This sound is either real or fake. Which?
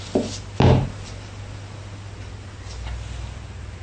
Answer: real